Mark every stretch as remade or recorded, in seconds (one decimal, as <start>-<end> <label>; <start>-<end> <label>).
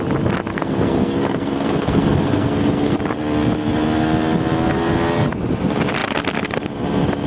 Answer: 0.0-0.5 recorded; 0.5-3.0 remade; 3.0-7.3 recorded